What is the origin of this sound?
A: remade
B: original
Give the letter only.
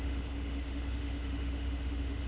A